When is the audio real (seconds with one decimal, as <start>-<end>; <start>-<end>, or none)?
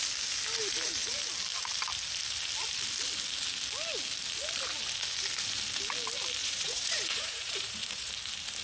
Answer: 0.0-6.4; 8.1-8.6